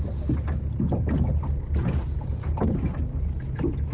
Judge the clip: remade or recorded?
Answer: recorded